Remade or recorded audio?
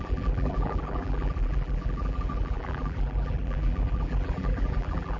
remade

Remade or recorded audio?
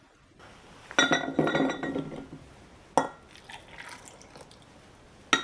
recorded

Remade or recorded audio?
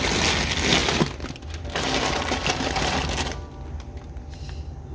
recorded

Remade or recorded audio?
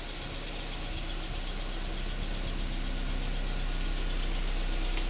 recorded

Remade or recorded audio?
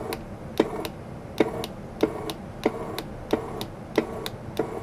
recorded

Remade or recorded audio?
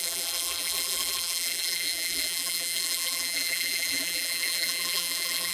remade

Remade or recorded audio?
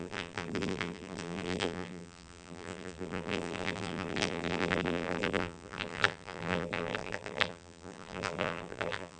remade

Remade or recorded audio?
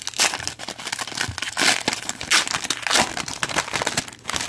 recorded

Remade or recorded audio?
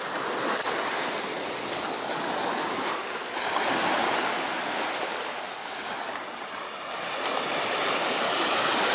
recorded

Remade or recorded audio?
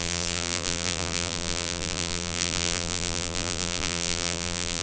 remade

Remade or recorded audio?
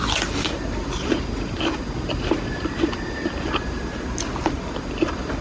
recorded